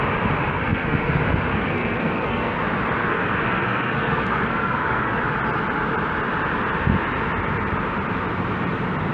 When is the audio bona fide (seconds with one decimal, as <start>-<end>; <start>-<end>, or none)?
0.0-0.5; 1.1-1.5; 2.6-3.0; 5.2-9.1